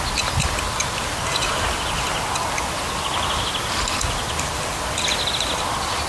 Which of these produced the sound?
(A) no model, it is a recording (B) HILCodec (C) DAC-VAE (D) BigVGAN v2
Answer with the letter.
A